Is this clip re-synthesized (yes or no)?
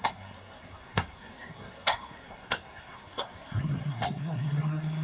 yes